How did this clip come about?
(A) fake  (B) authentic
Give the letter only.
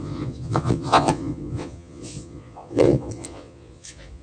A